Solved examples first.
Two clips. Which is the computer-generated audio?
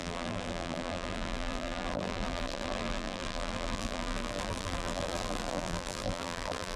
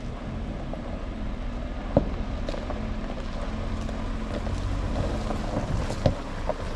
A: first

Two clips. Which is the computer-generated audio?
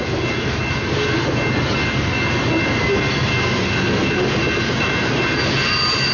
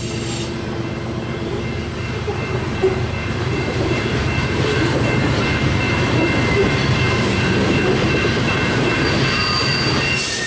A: second